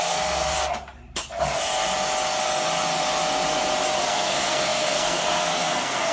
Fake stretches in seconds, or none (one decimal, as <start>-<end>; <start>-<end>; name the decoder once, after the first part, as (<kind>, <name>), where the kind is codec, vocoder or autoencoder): 0.0-0.5 (codec, SNAC); 4.0-6.1